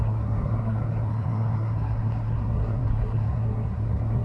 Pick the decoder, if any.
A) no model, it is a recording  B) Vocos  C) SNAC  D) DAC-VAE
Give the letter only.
C